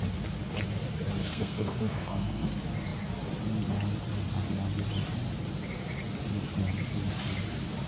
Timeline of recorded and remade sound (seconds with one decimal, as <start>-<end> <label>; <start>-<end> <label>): 0.0-1.2 recorded; 1.2-2.5 remade; 2.5-7.9 recorded